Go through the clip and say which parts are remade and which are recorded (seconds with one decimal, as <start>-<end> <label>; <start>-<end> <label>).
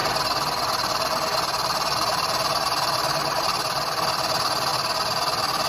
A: 0.0-5.7 remade